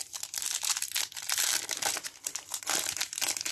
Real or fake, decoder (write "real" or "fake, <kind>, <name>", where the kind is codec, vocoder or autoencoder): real